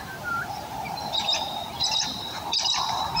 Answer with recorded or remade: remade